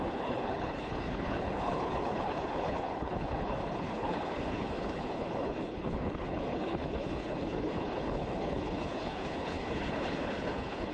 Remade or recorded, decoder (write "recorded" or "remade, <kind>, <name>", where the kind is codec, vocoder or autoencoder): remade, codec, HILCodec